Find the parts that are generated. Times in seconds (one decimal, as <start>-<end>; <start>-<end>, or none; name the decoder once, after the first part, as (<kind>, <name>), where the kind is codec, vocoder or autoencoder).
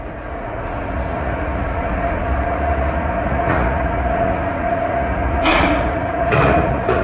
0.0-7.0 (vocoder, Vocos)